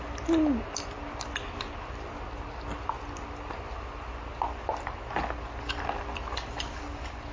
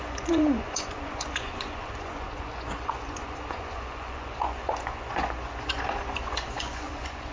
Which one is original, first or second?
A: first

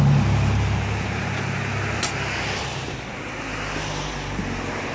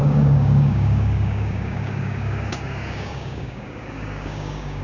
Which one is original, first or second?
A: first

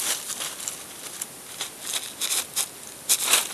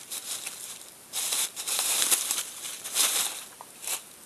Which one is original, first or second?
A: first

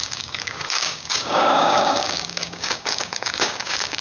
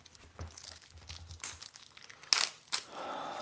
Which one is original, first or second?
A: second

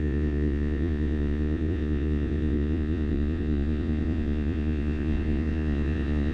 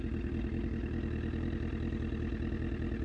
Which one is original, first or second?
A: second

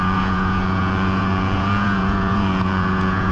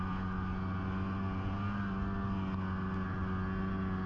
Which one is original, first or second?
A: second